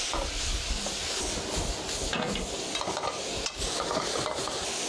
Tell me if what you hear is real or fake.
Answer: real